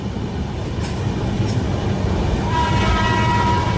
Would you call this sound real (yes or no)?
yes